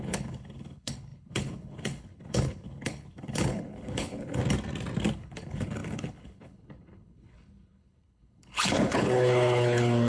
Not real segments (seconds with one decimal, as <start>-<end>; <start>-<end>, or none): 0.0-4.4; 5.1-10.1